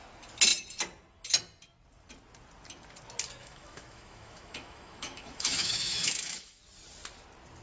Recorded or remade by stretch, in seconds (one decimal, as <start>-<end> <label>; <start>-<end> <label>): 0.0-3.4 recorded; 3.4-6.6 remade; 6.6-7.6 recorded